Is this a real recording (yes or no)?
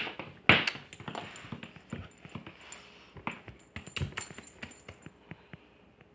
yes